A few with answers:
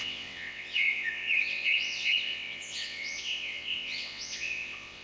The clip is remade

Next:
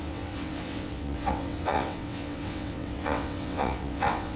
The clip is remade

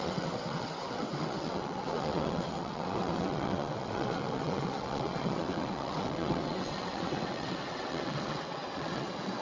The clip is remade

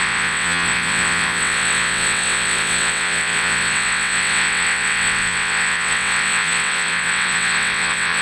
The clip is remade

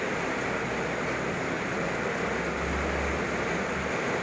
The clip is recorded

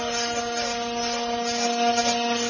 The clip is recorded